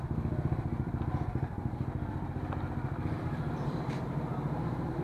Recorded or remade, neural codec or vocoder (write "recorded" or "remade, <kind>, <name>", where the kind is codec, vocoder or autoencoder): remade, vocoder, BigVGAN v2